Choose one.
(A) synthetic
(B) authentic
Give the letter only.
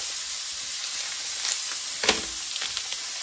B